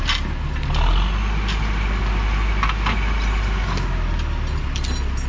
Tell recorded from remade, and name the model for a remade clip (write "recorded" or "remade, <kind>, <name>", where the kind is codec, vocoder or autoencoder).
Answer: recorded